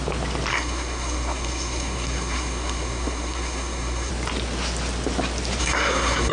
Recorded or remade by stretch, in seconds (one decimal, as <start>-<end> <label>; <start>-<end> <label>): 0.0-0.5 recorded; 0.5-4.1 remade; 4.1-5.6 recorded; 5.6-6.3 remade